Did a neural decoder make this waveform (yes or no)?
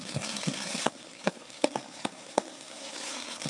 yes